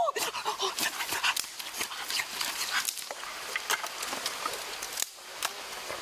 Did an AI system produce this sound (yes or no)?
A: no